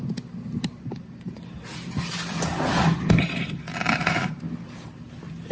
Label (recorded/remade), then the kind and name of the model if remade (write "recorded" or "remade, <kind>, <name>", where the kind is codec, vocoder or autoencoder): recorded